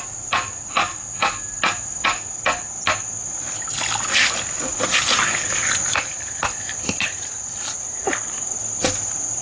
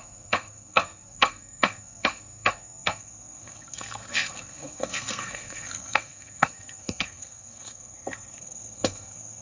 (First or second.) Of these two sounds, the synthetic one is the second